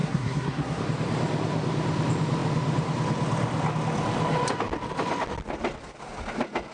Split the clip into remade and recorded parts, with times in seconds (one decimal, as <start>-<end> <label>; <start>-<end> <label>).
0.0-0.8 remade; 0.8-6.7 recorded